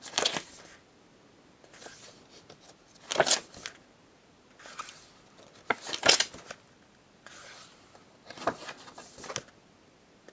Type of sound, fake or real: real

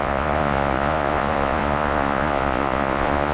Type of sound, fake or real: fake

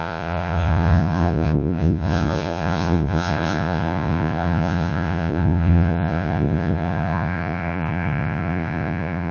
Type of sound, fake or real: fake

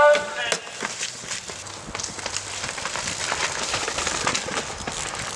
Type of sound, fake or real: real